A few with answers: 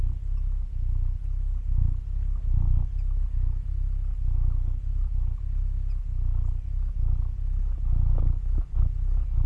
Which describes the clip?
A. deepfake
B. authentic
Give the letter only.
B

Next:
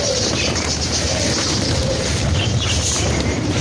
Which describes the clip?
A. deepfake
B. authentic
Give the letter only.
A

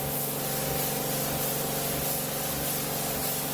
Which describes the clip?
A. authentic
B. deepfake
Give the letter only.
A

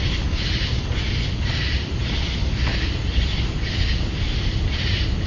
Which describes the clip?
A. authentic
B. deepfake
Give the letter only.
A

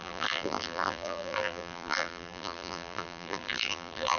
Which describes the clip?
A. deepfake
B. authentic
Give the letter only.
A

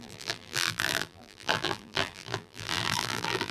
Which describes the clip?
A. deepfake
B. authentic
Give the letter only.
A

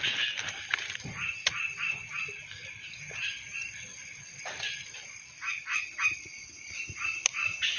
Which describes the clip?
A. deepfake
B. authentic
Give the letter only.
A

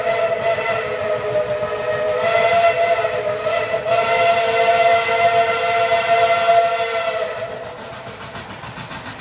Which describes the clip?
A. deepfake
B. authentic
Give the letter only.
B